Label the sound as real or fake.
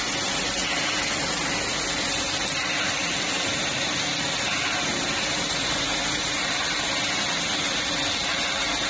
real